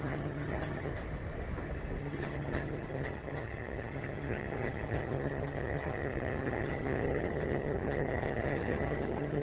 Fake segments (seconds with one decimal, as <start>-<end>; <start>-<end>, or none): 0.0-0.9; 2.0-9.4